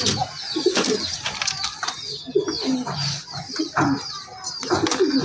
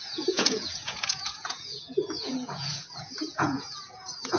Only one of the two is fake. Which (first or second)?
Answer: second